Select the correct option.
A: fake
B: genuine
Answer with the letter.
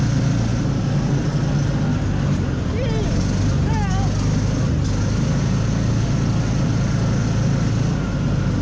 B